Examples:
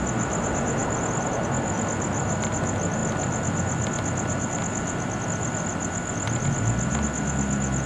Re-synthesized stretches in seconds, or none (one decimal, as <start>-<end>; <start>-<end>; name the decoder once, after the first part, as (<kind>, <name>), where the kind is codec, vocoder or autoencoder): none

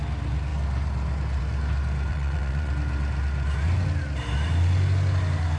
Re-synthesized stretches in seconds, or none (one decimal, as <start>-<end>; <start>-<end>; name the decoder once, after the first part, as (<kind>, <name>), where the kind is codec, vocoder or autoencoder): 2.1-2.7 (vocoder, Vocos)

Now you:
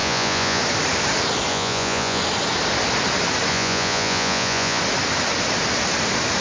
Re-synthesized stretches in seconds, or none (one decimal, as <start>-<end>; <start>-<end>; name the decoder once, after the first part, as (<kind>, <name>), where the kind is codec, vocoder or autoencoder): 0.0-0.6 (vocoder, Vocos); 1.5-2.2; 3.5-4.8